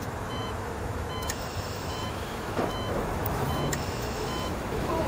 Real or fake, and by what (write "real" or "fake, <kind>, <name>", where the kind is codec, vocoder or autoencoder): fake, autoencoder, DAC-VAE